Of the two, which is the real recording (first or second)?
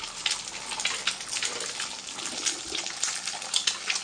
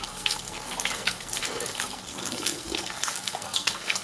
first